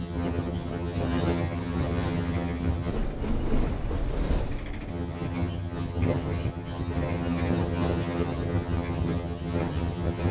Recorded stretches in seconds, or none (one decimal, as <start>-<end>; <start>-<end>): 2.9-4.9